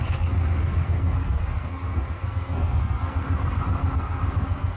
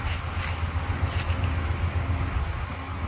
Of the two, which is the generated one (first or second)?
first